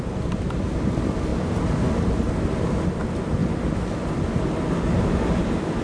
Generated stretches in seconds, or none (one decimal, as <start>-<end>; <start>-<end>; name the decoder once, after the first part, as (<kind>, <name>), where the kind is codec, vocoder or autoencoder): none